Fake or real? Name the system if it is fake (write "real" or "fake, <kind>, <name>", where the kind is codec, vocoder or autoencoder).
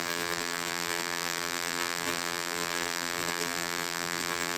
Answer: fake, vocoder, BigVGAN v2